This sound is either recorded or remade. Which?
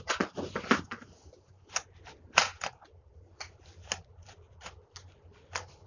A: recorded